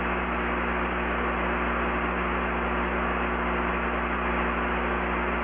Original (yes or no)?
yes